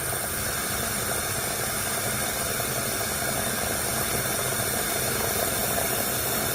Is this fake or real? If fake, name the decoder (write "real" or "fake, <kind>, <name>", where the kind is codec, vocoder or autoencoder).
real